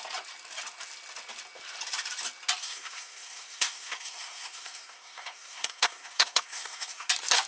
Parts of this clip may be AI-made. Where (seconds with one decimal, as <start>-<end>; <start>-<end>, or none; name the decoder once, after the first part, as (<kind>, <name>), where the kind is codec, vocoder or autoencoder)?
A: 2.6-7.1 (codec, SNAC)